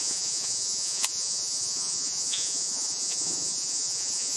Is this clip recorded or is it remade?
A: remade